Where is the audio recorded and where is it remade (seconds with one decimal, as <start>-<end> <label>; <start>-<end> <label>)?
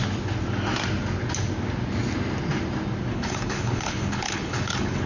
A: 0.0-3.1 recorded; 3.1-5.1 remade